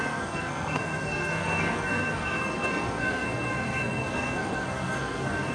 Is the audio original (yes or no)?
no